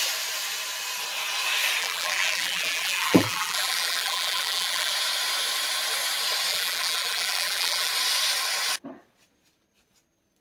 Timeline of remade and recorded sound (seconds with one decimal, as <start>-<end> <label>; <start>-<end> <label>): 0.0-1.8 recorded; 1.8-4.9 remade; 4.9-6.5 recorded; 6.5-7.9 remade; 7.9-10.4 recorded